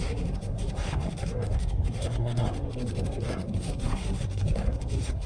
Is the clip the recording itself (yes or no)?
no